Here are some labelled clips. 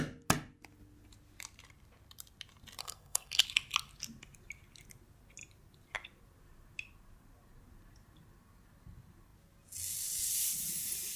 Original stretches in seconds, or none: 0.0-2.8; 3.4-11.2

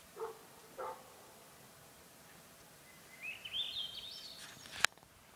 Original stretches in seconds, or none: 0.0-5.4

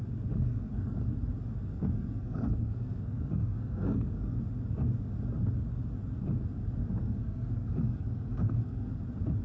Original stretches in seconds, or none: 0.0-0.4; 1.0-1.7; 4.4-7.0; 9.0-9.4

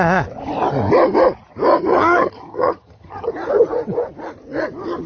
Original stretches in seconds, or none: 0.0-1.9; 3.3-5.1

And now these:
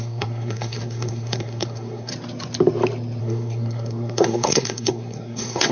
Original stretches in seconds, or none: 2.1-3.2

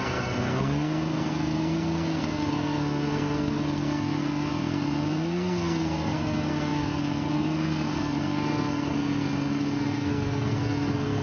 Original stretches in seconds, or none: none

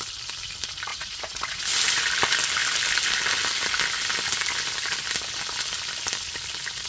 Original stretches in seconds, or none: 0.0-0.9; 1.6-6.9